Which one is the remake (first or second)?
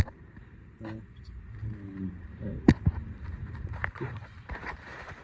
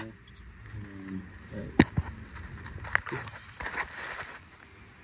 first